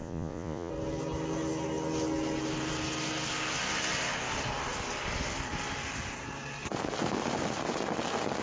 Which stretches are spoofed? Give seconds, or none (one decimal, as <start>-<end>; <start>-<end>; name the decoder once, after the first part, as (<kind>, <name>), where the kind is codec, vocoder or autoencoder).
0.0-0.7 (vocoder, Vocos)